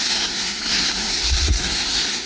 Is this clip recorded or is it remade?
remade